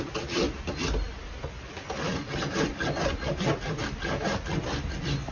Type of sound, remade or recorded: recorded